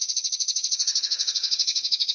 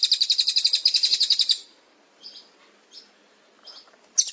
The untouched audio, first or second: second